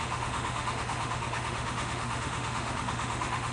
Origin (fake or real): fake